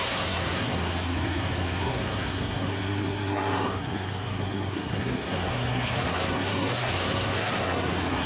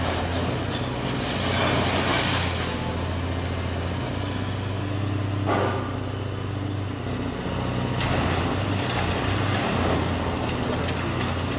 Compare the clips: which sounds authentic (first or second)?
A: second